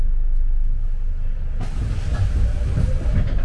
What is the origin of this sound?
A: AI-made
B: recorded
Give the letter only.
B